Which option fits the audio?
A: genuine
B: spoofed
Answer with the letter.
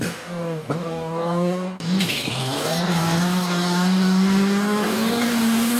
B